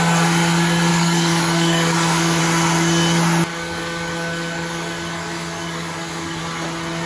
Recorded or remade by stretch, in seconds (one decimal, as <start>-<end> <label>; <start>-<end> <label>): 0.0-0.9 recorded; 0.9-2.4 remade; 2.4-3.5 recorded; 3.5-6.4 remade; 6.4-7.1 recorded